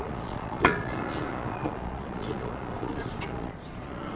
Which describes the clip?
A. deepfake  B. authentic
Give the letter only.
A